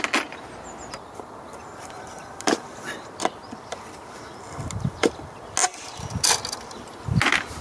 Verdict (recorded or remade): recorded